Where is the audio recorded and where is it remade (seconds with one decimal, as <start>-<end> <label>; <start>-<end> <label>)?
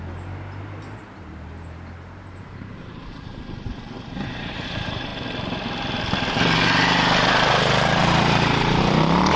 0.0-5.1 remade; 5.1-7.5 recorded; 7.5-9.4 remade